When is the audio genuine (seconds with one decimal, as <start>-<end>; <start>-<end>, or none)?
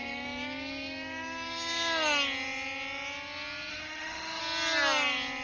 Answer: 0.0-3.7; 4.4-5.4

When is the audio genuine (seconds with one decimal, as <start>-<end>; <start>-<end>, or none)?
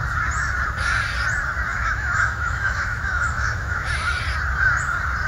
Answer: 0.0-1.7; 3.9-5.3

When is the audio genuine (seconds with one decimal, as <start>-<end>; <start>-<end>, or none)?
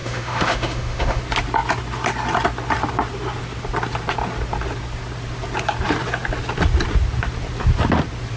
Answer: 1.2-8.4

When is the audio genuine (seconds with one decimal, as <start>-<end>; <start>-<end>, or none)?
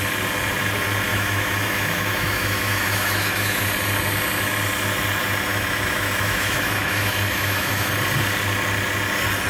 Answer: 0.0-1.1; 3.6-5.5; 7.9-9.5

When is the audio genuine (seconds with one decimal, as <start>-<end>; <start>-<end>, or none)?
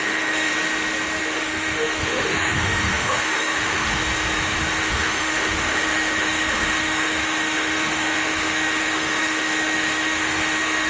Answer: 0.5-1.2; 4.0-4.8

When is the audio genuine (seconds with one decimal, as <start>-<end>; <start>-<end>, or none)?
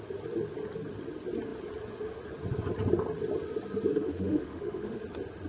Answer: 0.0-3.9; 5.0-5.5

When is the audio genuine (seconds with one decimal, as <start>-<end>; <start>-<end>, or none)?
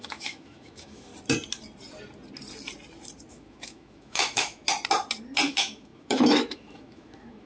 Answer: 1.1-3.3; 4.6-5.5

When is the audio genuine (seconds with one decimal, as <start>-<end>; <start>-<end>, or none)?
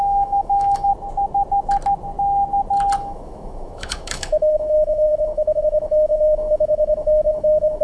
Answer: 0.9-3.0